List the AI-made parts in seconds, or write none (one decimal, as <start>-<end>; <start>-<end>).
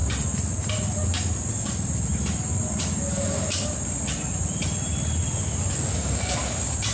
none